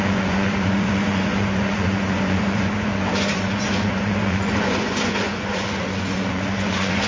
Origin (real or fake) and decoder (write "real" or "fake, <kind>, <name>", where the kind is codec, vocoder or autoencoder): fake, vocoder, Vocos